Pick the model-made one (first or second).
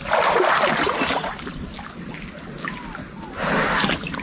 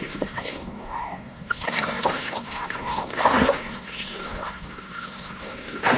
second